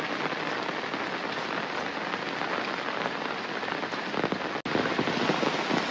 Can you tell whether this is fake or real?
real